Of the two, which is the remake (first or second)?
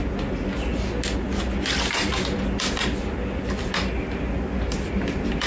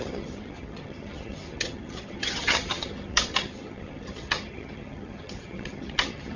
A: second